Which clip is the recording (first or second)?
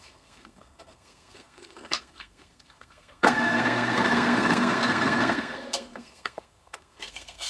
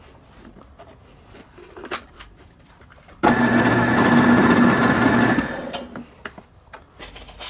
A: second